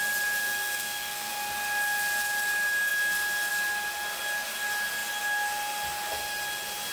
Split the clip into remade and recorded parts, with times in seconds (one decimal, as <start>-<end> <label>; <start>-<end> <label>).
0.0-0.4 recorded; 0.4-1.3 remade; 1.3-6.9 recorded